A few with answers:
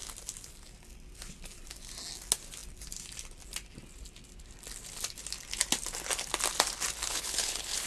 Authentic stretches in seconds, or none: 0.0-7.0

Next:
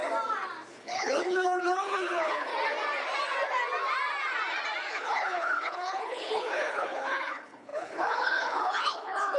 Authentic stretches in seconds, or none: 0.0-0.7; 2.5-4.9

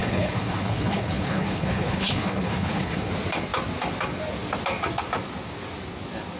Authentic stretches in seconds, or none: 3.1-6.4

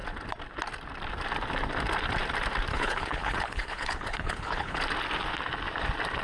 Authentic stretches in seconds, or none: 0.0-2.7; 4.8-6.2

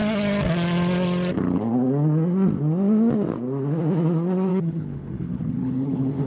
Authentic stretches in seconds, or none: 0.0-4.5

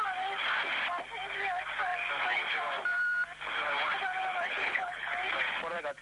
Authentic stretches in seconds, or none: 0.0-4.3; 5.1-6.0

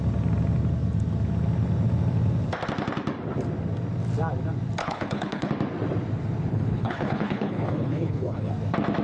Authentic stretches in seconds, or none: 0.0-4.8; 5.5-6.5; 8.5-9.0